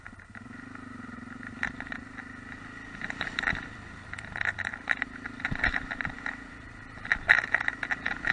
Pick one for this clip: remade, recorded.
remade